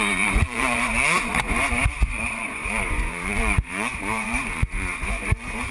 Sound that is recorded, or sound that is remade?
remade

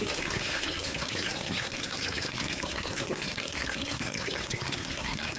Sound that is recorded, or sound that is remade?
remade